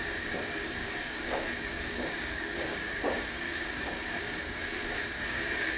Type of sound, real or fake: fake